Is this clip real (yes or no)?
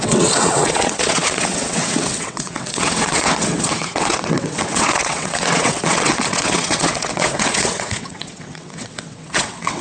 no